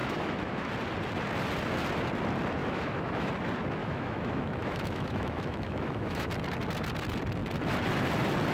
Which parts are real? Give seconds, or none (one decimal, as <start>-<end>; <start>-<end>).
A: 0.7-2.6; 3.3-3.8; 6.3-8.5